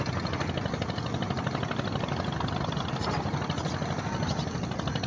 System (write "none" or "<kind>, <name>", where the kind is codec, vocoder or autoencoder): none